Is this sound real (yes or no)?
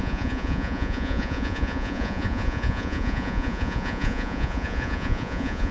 no